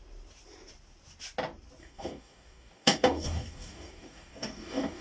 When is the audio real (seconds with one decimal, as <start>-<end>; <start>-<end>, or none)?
0.0-1.8